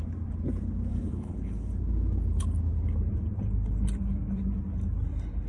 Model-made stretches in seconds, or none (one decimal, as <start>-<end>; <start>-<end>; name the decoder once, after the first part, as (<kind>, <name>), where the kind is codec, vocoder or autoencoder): 0.9-1.8 (codec, HILCodec)